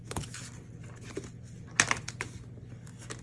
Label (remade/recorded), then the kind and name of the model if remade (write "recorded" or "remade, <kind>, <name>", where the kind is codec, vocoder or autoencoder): recorded